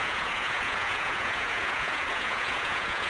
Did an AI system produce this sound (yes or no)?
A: yes